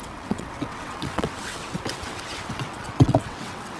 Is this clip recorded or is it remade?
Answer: remade